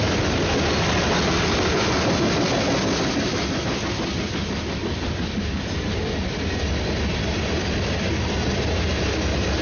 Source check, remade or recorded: recorded